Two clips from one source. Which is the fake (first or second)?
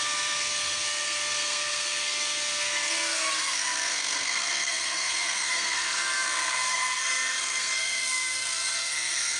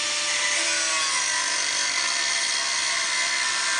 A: first